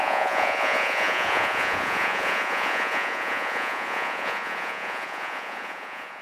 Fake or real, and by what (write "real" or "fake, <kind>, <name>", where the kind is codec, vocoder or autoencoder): fake, vocoder, Vocos